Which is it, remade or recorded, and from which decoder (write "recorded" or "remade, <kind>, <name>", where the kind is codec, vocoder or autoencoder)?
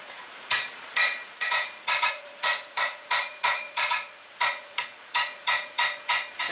remade, vocoder, Vocos